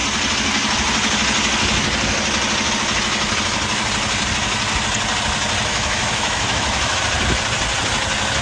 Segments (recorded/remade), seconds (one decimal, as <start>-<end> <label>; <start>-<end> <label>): 0.0-5.7 recorded; 5.7-7.0 remade; 7.0-8.4 recorded